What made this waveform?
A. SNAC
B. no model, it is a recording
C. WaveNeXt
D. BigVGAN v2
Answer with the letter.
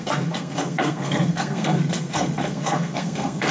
A